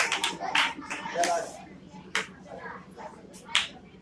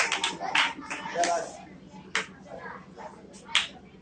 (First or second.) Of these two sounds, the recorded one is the second